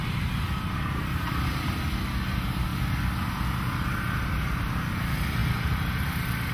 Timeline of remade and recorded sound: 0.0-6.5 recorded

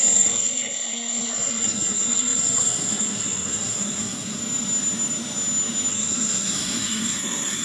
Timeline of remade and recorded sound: 0.0-4.4 remade; 4.4-5.9 recorded; 5.9-7.6 remade

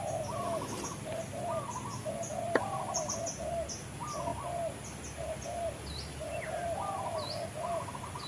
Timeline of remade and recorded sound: 0.0-8.3 recorded

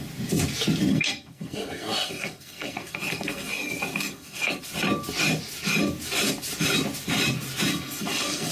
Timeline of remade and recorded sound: 0.0-0.9 recorded; 0.9-3.5 remade; 3.5-3.9 recorded; 3.9-4.6 remade; 4.6-7.7 recorded; 7.7-8.5 remade